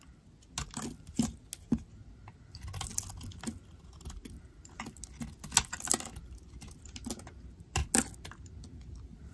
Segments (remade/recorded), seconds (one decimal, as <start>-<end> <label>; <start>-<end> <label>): 0.0-9.3 recorded